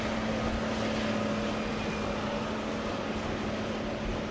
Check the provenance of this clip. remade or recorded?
recorded